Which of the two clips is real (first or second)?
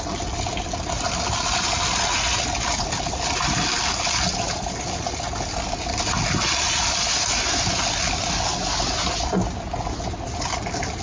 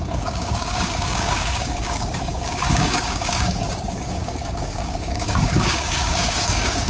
first